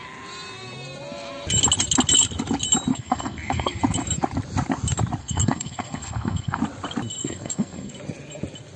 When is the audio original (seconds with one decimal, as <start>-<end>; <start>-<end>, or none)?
0.0-2.9; 3.8-5.2; 6.6-7.2; 7.9-8.8